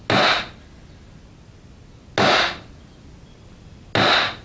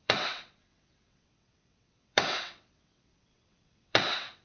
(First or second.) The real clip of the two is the first